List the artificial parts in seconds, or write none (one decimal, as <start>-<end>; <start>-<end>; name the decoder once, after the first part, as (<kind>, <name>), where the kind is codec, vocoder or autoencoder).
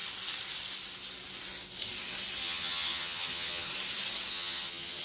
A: 2.4-3.7 (vocoder, HiFi-GAN); 4.3-5.0